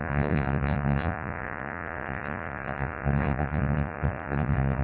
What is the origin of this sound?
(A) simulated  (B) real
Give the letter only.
A